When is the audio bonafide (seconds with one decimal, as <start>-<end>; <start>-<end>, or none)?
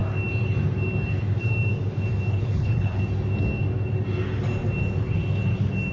0.0-2.3; 3.0-5.9